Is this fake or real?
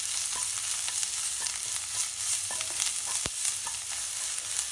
real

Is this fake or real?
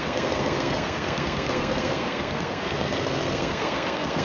fake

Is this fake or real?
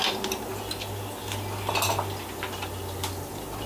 real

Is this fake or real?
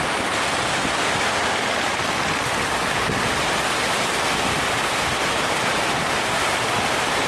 real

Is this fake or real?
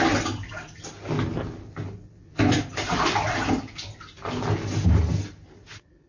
real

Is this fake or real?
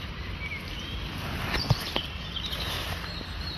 real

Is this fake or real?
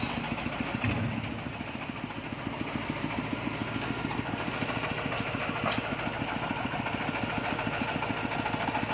real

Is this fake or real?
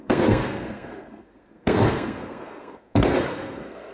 fake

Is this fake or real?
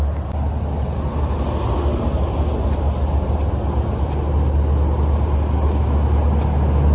real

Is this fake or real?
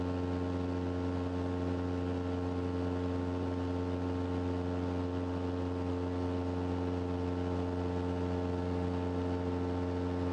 real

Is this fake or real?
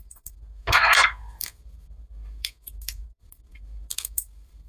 fake